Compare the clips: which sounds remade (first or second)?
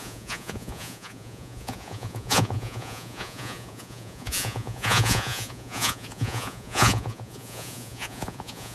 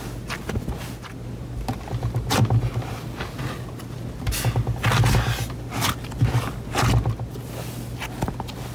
first